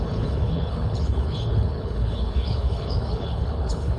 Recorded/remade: remade